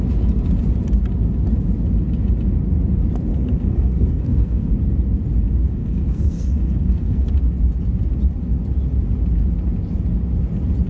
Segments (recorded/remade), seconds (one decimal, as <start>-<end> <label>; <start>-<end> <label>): 0.0-3.3 recorded; 3.3-4.7 remade; 4.7-5.8 recorded; 5.8-7.3 remade; 7.3-10.9 recorded